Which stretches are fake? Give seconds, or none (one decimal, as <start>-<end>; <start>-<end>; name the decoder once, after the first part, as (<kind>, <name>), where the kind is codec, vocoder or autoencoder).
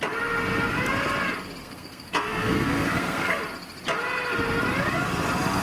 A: 1.6-3.4 (codec, SNAC)